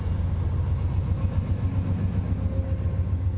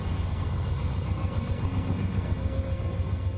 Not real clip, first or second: second